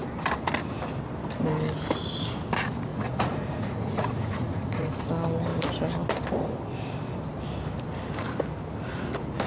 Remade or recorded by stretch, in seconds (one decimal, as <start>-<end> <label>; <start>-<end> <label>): 0.0-2.9 recorded; 2.9-5.1 remade; 5.1-9.5 recorded